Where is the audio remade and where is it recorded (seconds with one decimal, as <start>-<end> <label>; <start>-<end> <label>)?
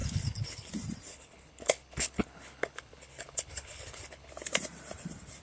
0.0-0.7 remade; 0.7-1.1 recorded; 1.1-4.3 remade; 4.3-5.4 recorded